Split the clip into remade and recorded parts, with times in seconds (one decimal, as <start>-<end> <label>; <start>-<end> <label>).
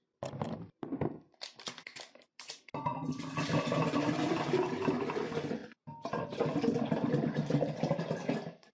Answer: 0.0-8.7 recorded